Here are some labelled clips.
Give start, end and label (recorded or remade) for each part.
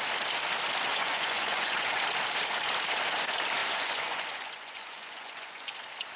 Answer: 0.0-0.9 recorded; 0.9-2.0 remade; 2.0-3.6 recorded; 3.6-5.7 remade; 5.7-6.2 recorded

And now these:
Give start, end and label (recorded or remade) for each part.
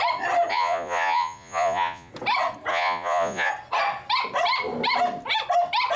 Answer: 0.0-0.5 recorded; 0.5-2.1 remade; 2.1-2.7 recorded; 2.7-3.5 remade; 3.5-6.0 recorded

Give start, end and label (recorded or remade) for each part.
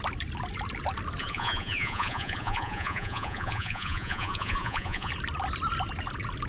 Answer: 0.0-1.2 recorded; 1.2-5.1 remade; 5.1-6.5 recorded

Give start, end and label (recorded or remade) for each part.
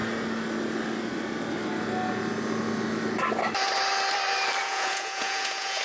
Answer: 0.0-4.6 recorded; 4.6-5.8 remade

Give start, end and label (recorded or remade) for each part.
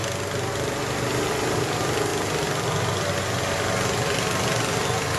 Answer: 0.0-5.2 recorded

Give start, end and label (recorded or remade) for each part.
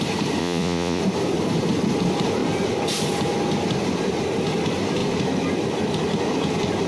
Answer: 0.0-0.4 recorded; 0.4-1.0 remade; 1.0-6.9 recorded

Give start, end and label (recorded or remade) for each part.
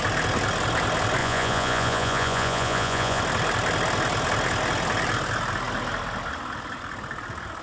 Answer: 0.0-1.2 recorded; 1.2-3.2 remade; 3.2-7.6 recorded